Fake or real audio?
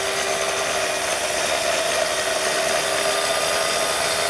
real